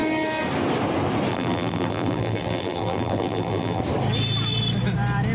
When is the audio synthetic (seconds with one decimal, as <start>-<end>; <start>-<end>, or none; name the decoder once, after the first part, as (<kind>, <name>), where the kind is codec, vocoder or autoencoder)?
1.3-3.8 (vocoder, BigVGAN v2)